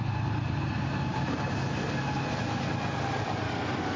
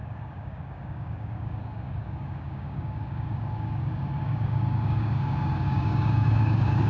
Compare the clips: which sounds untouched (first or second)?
first